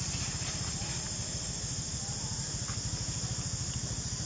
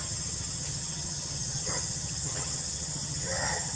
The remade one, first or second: second